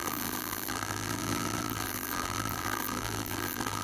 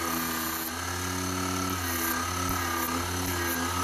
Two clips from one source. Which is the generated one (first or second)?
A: first